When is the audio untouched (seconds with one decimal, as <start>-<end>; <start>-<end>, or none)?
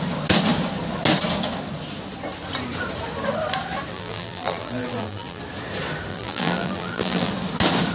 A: 0.0-3.9; 5.4-6.1; 7.3-7.9